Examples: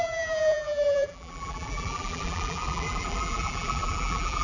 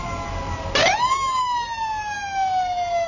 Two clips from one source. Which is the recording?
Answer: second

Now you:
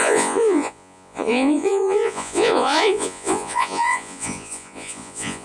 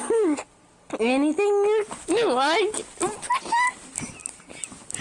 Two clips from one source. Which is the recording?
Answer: second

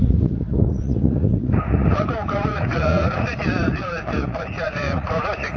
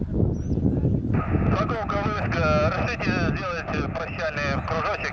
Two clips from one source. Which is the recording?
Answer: second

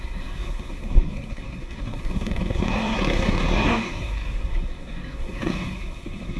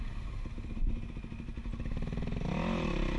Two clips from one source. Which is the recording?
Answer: second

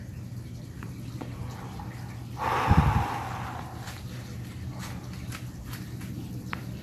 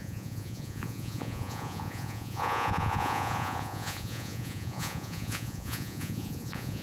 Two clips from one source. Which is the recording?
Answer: first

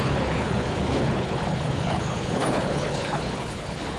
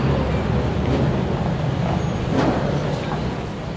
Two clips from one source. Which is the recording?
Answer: second